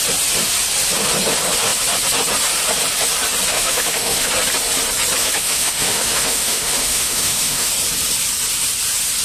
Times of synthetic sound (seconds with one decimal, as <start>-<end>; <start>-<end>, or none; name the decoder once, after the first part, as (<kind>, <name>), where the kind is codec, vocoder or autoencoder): 3.5-4.3 (autoencoder, DAC-VAE); 5.2-7.7